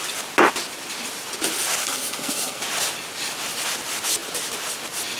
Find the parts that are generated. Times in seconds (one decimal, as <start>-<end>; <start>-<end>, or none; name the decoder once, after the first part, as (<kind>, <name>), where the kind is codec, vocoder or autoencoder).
1.8-2.6 (codec, SNAC)